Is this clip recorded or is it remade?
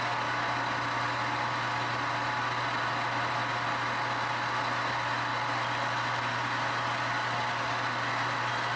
recorded